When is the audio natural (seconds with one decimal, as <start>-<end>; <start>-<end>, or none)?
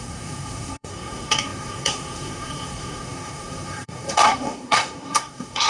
none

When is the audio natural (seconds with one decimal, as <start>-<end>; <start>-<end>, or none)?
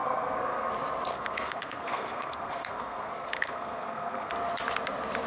0.7-1.1; 4.3-5.3